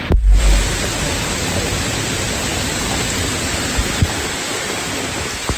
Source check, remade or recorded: recorded